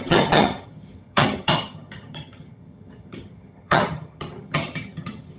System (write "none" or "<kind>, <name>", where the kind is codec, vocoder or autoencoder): vocoder, HiFi-GAN